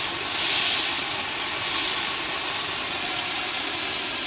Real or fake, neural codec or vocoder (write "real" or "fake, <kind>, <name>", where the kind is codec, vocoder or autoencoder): real